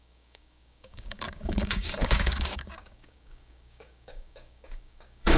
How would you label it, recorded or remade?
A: remade